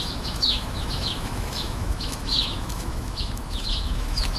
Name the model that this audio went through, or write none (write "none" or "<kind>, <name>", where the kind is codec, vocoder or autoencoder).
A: autoencoder, DAC-VAE